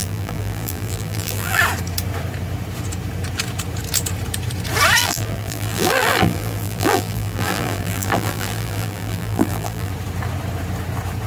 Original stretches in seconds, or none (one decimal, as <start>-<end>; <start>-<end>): 1.6-5.0; 9.9-11.3

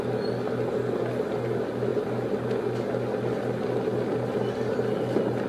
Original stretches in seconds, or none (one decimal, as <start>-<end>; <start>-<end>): 0.0-5.5

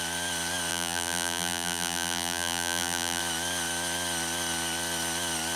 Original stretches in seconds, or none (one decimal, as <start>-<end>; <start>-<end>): 0.0-0.7; 3.2-5.6

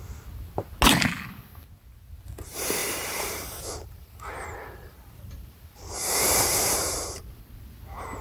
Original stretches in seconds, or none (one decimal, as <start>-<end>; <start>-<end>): 0.0-2.8; 7.2-8.2

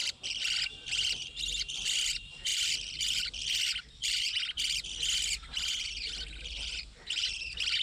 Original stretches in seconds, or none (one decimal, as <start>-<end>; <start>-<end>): 1.3-2.5; 3.4-4.0; 4.6-7.8

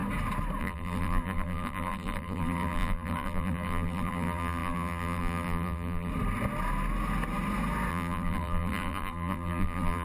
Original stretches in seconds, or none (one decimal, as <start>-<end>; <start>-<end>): 0.0-0.6; 6.1-7.9